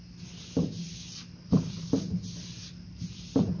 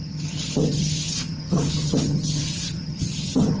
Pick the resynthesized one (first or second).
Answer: second